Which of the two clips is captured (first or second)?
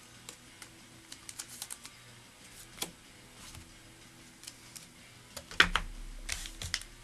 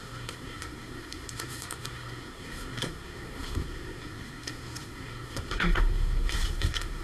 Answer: first